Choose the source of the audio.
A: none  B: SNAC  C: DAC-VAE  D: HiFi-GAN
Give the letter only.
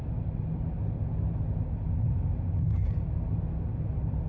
A